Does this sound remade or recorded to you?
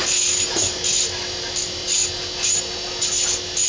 recorded